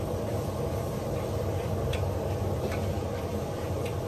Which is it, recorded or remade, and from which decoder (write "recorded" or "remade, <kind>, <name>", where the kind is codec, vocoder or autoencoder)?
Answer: remade, vocoder, BigVGAN v2